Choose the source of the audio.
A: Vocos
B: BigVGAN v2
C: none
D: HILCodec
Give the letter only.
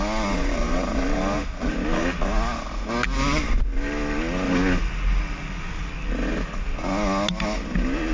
C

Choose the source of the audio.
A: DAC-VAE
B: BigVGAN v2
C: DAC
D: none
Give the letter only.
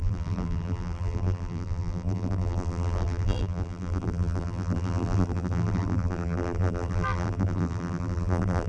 B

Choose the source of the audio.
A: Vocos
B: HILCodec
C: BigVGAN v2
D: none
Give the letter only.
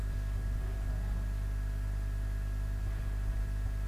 D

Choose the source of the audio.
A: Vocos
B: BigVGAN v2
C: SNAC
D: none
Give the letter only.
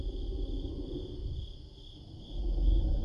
D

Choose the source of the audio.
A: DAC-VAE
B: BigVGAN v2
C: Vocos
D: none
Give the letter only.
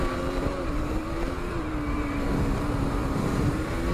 B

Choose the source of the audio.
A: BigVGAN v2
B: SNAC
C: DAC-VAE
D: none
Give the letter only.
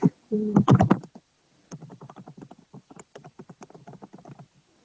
A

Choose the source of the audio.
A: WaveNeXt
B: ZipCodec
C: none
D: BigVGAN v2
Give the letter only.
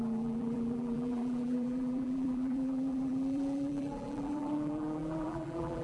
D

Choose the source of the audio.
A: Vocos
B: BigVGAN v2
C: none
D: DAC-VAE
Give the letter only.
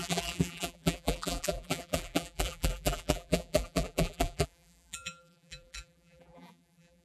B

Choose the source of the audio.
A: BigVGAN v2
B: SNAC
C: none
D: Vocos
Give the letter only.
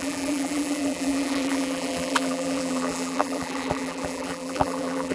A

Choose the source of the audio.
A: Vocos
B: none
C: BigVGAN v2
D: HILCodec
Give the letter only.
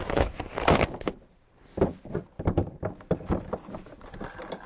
C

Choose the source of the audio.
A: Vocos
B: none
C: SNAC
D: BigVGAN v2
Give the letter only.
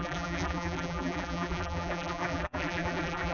D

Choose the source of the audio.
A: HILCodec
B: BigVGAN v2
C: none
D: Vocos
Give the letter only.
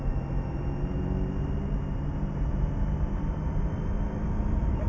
C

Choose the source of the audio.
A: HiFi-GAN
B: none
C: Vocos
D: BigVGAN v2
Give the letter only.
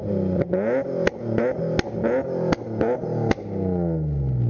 B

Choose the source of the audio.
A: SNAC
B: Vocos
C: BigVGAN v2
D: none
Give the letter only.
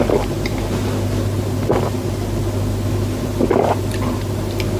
D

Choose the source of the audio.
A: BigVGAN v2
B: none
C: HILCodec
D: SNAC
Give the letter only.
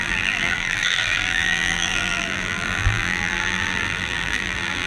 A